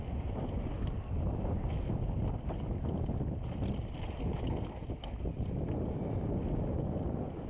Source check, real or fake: real